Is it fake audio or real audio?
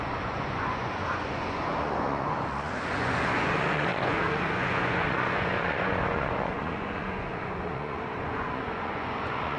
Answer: fake